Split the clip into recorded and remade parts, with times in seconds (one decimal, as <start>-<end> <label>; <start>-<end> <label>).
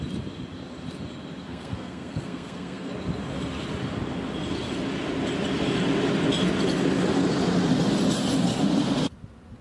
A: 0.0-1.4 recorded; 1.4-2.9 remade; 2.9-9.6 recorded